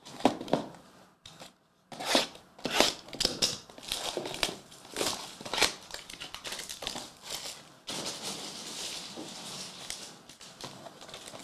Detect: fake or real real